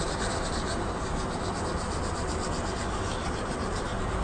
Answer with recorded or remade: recorded